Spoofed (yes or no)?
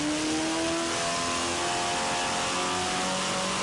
no